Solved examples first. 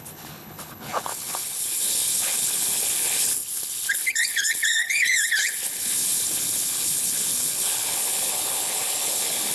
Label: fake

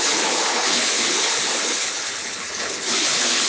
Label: fake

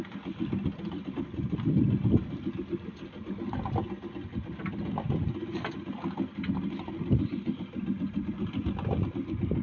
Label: real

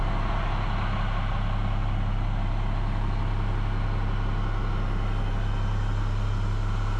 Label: real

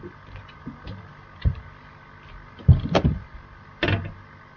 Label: real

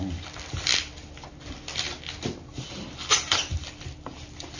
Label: real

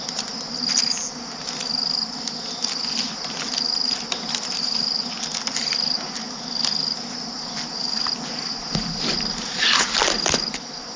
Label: real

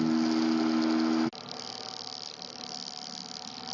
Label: real